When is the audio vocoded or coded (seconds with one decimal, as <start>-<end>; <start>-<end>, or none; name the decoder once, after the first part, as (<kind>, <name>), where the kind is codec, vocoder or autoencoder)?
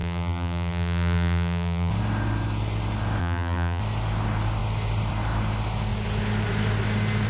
0.0-1.9 (vocoder, BigVGAN v2); 3.2-3.8